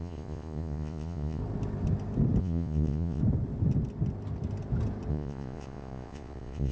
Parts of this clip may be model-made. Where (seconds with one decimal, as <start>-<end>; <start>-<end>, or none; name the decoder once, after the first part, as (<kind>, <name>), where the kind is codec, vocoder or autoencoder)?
0.0-1.4 (vocoder, Vocos); 2.4-3.2; 5.1-6.7